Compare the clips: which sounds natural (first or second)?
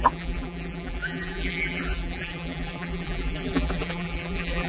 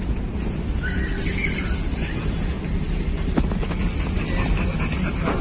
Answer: second